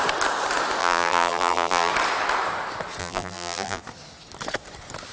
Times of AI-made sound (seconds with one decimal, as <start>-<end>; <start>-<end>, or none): 0.8-1.9; 3.0-3.8